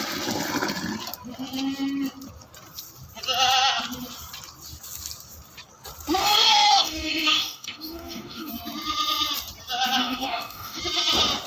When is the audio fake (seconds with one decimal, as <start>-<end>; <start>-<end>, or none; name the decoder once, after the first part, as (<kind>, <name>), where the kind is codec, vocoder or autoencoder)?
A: 6.2-8.5 (codec, DAC); 10.0-10.8